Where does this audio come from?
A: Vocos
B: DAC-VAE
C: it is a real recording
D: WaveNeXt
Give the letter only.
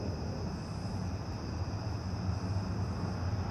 C